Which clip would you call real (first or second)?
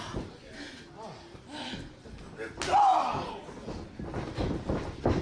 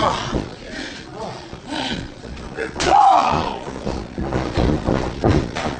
first